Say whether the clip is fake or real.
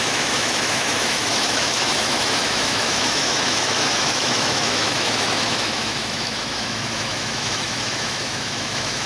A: fake